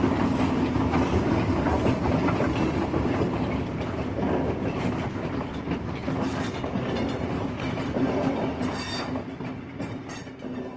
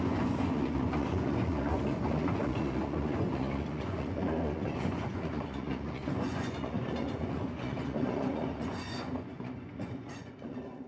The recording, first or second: first